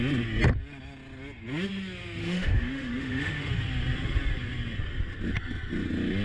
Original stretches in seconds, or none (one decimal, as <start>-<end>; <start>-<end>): 0.0-2.2; 3.5-6.2

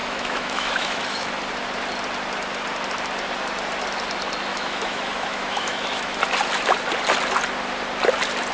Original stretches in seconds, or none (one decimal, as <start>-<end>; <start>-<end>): 1.3-4.5; 6.2-8.5

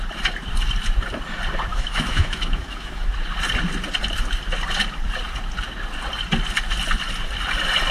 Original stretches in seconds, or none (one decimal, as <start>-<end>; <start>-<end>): 0.0-1.7; 3.1-7.9

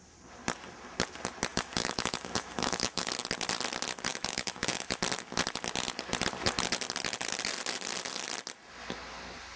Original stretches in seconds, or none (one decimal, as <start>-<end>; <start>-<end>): 0.0-1.5; 3.1-4.1; 4.9-9.6

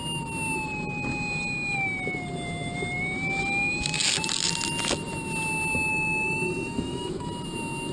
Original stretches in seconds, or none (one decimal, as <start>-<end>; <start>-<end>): 0.0-5.9; 7.3-7.9

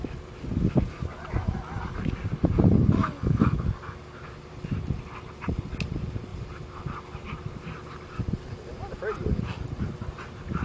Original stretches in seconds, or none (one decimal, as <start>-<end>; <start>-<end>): 0.0-3.0; 3.6-10.6

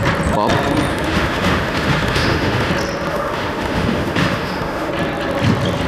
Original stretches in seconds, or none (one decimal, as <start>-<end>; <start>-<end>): 0.0-0.9; 2.7-3.1; 4.9-5.9